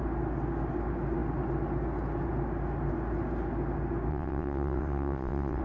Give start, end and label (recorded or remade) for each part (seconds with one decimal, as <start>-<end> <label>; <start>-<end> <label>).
0.0-4.1 recorded; 4.1-5.6 remade

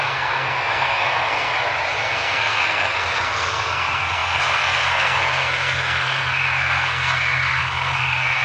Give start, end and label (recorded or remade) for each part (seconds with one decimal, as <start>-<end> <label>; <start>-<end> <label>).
0.0-1.5 remade; 1.5-2.0 recorded; 2.0-8.4 remade

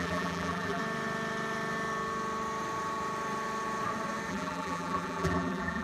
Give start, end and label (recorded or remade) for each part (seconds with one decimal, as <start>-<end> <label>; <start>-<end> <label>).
0.0-0.8 remade; 0.8-4.3 recorded; 4.3-5.8 remade

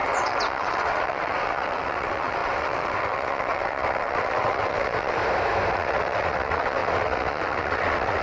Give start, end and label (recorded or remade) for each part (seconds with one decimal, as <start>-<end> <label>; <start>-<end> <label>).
0.0-5.2 remade; 5.2-5.7 recorded; 5.7-8.2 remade

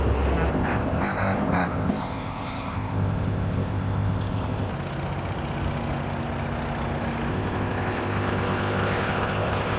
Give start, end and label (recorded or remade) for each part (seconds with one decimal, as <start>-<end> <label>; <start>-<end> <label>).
0.0-0.5 recorded; 0.5-4.7 remade; 4.7-7.3 recorded; 7.3-9.8 remade

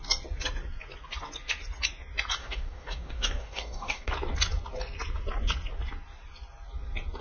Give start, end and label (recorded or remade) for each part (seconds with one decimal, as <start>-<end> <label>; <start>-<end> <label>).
0.0-2.4 recorded; 2.4-4.1 remade; 4.1-7.2 recorded